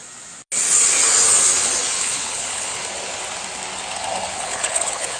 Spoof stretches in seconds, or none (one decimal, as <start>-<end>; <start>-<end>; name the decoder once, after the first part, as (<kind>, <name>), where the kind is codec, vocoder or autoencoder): 2.0-2.8 (codec, HILCodec); 4.3-5.2